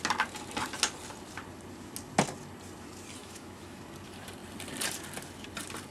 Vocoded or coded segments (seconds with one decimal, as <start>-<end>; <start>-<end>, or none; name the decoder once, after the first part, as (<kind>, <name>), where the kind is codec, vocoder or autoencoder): 3.2-3.8 (autoencoder, DAC-VAE)